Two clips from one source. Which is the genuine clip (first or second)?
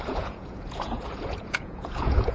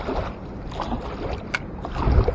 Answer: second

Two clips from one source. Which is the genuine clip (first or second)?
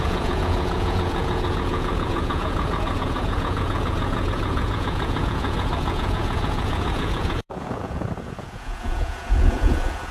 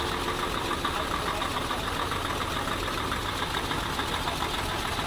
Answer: second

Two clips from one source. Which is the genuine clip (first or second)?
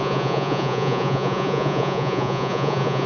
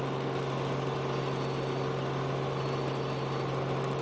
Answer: second